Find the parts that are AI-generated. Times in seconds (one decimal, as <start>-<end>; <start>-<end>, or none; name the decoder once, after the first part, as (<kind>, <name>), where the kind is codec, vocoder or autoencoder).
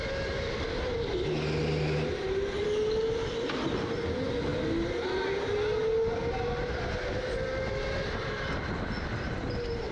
none